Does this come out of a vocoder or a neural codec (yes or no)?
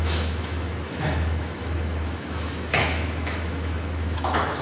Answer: yes